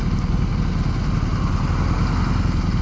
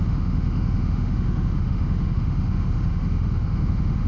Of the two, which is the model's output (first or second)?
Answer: second